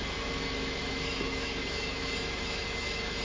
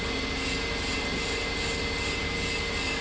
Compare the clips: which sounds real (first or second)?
second